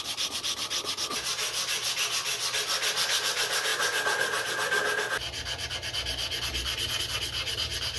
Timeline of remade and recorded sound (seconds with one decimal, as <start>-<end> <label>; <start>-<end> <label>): 0.0-8.0 recorded